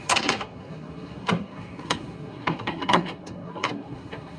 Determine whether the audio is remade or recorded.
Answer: remade